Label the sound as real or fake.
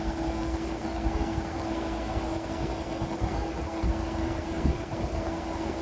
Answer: fake